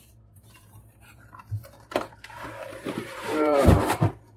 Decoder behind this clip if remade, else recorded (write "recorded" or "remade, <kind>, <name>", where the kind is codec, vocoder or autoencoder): remade, vocoder, BigVGAN v2